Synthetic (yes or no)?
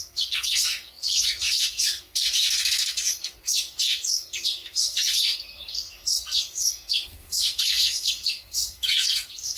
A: yes